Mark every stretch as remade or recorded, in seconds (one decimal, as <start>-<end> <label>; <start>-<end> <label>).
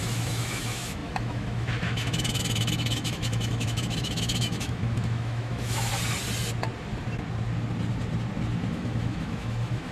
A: 0.0-5.9 remade; 5.9-8.7 recorded; 8.7-9.9 remade